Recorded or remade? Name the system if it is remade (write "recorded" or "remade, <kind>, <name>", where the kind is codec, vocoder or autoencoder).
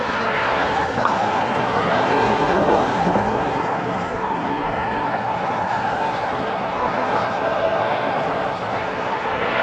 remade, codec, SNAC